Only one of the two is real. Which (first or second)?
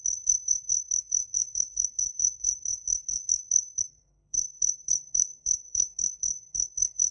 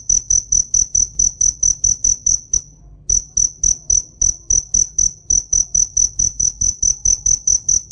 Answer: second